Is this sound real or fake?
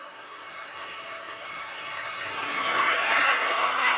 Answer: fake